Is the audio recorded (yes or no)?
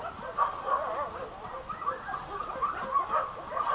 yes